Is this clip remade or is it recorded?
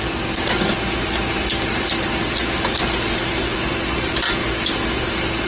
recorded